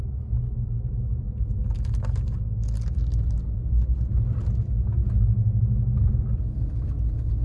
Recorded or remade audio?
recorded